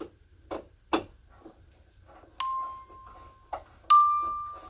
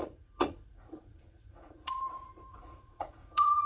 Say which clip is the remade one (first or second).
second